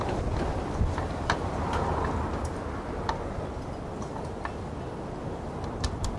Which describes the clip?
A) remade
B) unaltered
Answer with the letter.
B